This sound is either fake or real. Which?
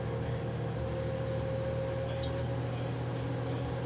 real